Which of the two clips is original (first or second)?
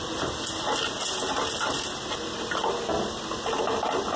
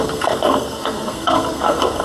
first